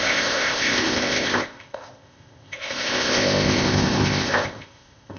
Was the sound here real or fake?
fake